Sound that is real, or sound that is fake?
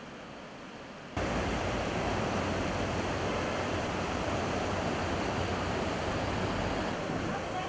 real